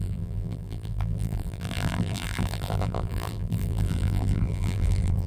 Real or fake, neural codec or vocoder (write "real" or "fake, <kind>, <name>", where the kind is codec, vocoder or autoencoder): fake, vocoder, BigVGAN v2